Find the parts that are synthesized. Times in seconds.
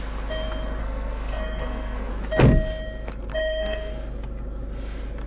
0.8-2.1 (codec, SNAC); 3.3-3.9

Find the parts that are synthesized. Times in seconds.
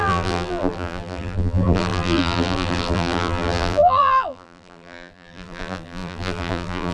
0.0-6.9 (vocoder, BigVGAN v2)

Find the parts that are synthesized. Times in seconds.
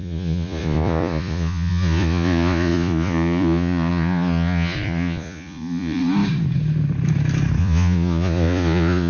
0.0-6.0 (vocoder, Vocos); 7.6-9.1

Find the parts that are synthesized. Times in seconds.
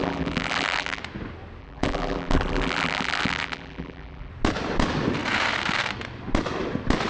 0.0-1.0 (vocoder, BigVGAN v2); 1.6-4.3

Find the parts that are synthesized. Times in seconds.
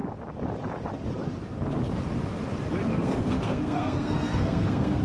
2.9-5.0 (codec, SNAC)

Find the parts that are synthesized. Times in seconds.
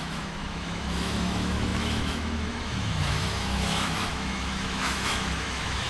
0.0-5.9 (autoencoder, DAC-VAE)